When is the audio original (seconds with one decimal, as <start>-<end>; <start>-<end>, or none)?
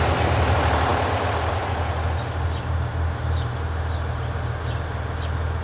0.0-5.6